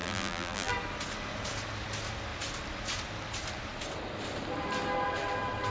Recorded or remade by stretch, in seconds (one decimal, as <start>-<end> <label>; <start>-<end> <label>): 0.0-0.7 remade; 0.7-5.7 recorded